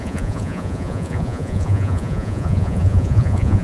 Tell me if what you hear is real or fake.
fake